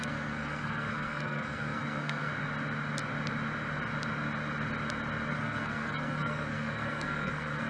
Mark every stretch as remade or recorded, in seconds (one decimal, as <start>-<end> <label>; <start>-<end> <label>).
0.0-2.3 remade; 2.3-5.3 recorded; 5.3-7.7 remade